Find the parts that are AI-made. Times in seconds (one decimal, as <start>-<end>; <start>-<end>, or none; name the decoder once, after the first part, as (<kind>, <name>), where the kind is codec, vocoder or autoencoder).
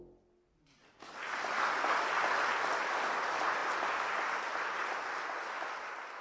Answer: none